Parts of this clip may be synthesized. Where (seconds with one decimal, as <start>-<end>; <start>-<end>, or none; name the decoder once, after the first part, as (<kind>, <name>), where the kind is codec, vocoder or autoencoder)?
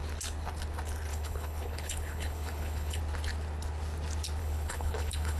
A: 1.1-3.0 (codec, HILCodec); 4.4-5.4